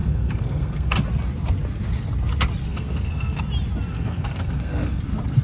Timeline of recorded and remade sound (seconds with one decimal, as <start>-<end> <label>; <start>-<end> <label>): 0.0-0.9 remade; 0.9-2.6 recorded; 2.6-3.4 remade; 3.4-3.9 recorded; 3.9-5.0 remade; 5.0-5.4 recorded